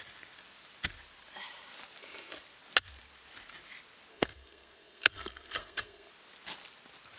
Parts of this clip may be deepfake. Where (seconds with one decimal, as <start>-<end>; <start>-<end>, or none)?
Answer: 4.1-6.1